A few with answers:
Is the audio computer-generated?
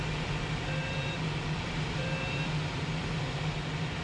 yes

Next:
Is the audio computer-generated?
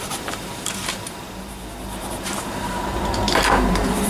yes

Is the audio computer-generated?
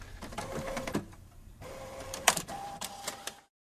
yes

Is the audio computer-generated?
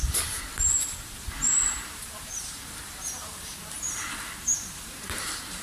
yes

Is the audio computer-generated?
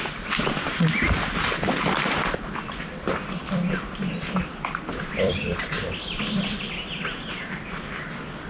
yes